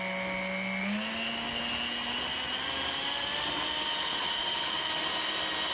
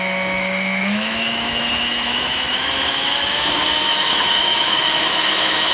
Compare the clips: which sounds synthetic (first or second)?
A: second